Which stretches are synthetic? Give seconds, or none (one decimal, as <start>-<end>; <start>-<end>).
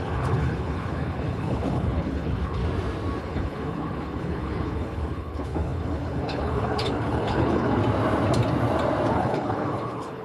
0.0-2.6; 3.2-7.8; 9.1-10.2